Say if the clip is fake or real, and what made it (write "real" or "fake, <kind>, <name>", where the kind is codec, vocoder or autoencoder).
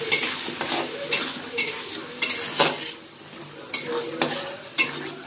real